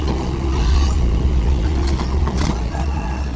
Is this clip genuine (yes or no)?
no